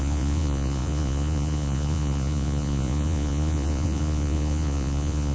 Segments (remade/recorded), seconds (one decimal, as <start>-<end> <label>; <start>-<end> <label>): 0.0-5.3 remade